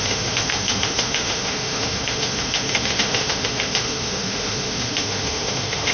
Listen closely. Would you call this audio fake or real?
fake